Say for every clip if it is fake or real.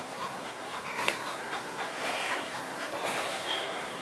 fake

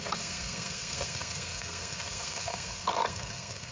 fake